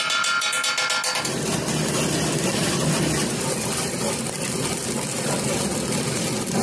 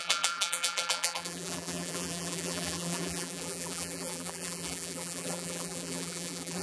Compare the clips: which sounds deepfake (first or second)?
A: second